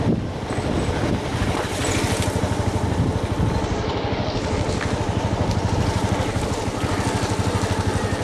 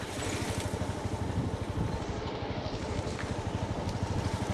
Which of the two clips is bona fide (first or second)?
first